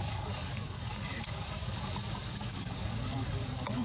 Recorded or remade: remade